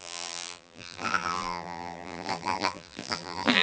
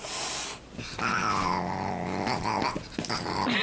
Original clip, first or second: second